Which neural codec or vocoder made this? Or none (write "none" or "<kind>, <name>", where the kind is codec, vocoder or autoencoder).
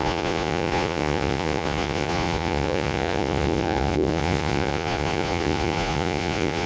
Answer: vocoder, Vocos